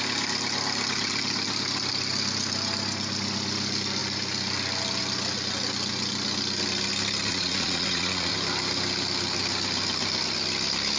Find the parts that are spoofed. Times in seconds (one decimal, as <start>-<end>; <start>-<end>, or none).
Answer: 7.3-8.3